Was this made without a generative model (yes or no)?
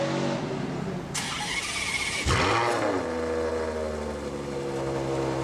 yes